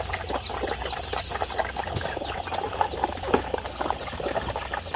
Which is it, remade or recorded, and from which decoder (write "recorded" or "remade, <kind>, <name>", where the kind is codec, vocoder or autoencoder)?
recorded